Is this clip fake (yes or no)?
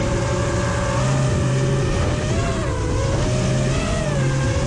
no